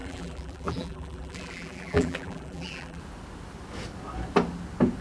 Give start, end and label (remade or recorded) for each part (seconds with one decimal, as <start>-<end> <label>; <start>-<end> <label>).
0.0-3.0 remade; 3.0-5.0 recorded